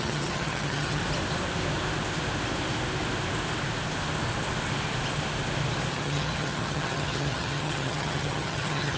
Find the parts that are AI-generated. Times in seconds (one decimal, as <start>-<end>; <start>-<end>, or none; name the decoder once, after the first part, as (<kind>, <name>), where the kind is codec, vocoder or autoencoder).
0.0-1.0 (vocoder, HiFi-GAN); 5.9-9.0